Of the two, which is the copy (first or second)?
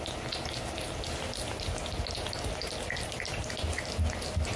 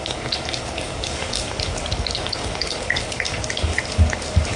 second